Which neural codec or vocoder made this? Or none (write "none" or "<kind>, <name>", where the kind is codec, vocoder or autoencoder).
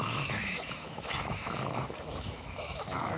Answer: autoencoder, DAC-VAE